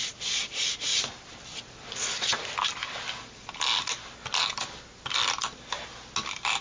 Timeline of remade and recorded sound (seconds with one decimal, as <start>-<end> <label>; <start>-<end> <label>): 0.0-6.6 recorded

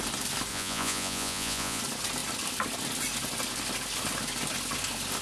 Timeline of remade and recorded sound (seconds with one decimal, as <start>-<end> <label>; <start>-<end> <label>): 0.0-0.5 recorded; 0.5-1.8 remade; 1.8-5.2 recorded

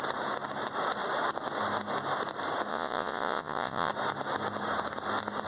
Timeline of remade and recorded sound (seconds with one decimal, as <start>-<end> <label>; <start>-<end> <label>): 0.0-2.7 recorded; 2.7-3.9 remade; 3.9-5.5 recorded